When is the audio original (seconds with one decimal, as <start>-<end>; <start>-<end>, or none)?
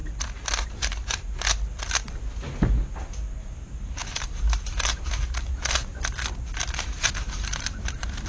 0.0-3.4; 5.5-6.8